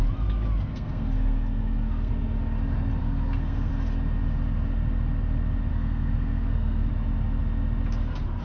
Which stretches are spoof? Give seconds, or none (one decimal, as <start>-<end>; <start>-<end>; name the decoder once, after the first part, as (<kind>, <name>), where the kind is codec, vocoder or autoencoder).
0.7-2.1 (codec, SNAC); 3.0-3.7; 5.7-6.9